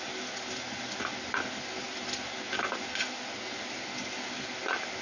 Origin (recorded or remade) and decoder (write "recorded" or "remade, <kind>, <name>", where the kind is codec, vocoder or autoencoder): recorded